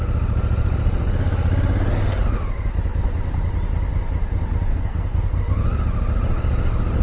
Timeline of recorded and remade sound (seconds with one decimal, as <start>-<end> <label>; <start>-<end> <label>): 0.0-4.7 recorded; 4.7-5.4 remade; 5.4-7.0 recorded